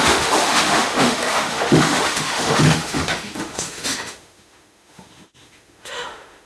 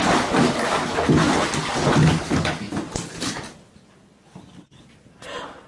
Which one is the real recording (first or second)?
second